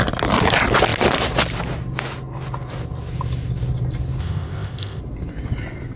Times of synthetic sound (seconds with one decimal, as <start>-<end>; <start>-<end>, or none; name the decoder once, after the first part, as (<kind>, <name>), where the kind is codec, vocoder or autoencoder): 4.2-5.0 (codec, ZipCodec)